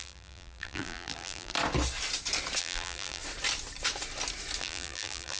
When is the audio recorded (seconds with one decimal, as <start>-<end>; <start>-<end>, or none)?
1.5-2.6; 3.2-4.6